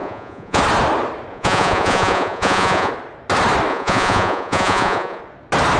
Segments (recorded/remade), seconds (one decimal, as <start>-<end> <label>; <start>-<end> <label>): 0.0-0.6 remade; 0.6-1.3 recorded; 1.3-2.9 remade; 2.9-3.7 recorded; 3.7-5.2 remade; 5.2-5.8 recorded